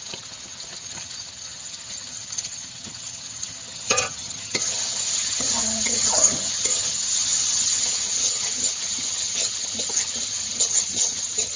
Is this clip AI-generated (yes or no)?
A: yes